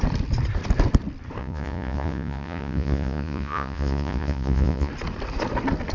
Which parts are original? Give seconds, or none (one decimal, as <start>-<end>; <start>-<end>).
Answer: 0.0-1.4; 4.9-5.9